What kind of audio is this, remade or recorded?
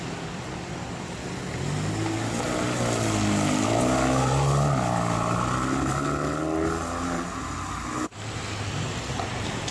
recorded